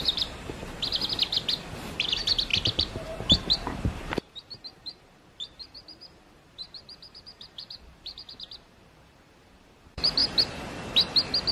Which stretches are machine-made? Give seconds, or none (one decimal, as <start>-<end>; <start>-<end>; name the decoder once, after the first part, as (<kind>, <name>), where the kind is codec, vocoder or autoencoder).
0.0-0.6 (vocoder, BigVGAN v2); 1.7-10.2